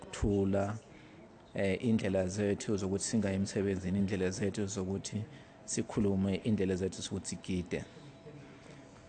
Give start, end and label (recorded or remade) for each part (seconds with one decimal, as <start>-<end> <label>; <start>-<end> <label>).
0.0-3.1 recorded; 3.1-4.0 remade; 4.0-5.0 recorded; 5.0-5.7 remade; 5.7-9.1 recorded